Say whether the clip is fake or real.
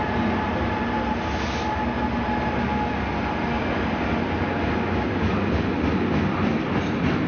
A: real